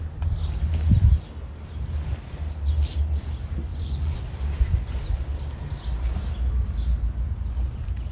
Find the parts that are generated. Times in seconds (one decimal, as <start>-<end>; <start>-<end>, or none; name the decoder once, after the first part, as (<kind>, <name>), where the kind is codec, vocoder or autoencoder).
3.7-4.2 (vocoder, Vocos)